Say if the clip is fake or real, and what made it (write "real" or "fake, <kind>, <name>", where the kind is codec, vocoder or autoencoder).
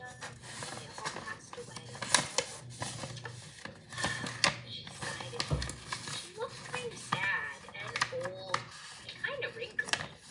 real